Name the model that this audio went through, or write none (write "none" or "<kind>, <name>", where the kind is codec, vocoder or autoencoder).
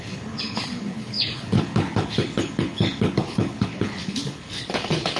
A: codec, HILCodec